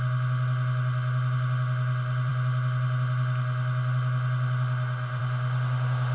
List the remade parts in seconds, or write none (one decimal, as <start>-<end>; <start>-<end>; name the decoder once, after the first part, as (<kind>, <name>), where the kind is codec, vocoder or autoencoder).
none